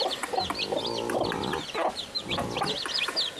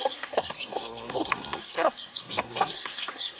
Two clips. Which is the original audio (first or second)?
first